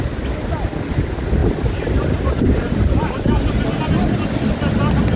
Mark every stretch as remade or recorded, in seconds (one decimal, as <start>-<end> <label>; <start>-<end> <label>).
0.0-5.2 recorded